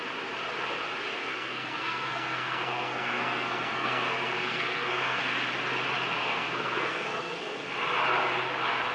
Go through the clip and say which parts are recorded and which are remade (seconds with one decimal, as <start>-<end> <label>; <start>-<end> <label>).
0.0-1.2 recorded; 1.2-5.2 remade; 5.2-6.2 recorded; 6.2-7.7 remade; 7.7-8.9 recorded

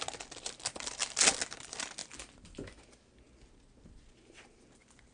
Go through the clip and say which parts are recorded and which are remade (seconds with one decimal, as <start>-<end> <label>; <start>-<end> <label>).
0.0-5.1 recorded

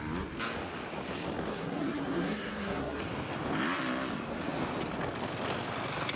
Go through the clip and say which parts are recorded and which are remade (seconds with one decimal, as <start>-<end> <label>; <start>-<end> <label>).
0.0-1.5 recorded; 1.5-3.0 remade; 3.0-6.2 recorded

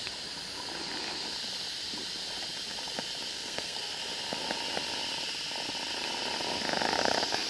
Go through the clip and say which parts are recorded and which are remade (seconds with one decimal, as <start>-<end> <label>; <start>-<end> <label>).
0.0-3.3 recorded; 3.3-4.0 remade; 4.0-7.5 recorded

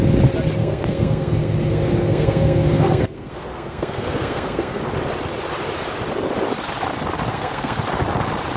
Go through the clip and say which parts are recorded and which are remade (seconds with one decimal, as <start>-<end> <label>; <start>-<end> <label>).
0.0-0.6 recorded; 0.6-4.8 remade; 4.8-7.3 recorded; 7.3-7.8 remade; 7.8-8.6 recorded